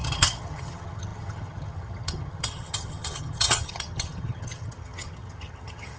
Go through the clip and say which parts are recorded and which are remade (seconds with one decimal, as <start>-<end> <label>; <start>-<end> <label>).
0.0-6.0 remade